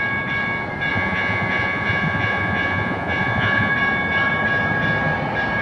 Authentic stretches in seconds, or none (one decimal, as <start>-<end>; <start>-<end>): 0.0-0.9; 3.7-5.6